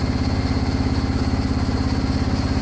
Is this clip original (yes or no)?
yes